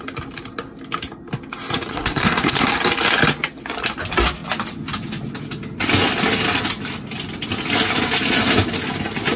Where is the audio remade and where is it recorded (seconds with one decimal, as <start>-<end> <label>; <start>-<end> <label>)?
0.0-1.9 recorded; 1.9-2.7 remade; 2.7-9.4 recorded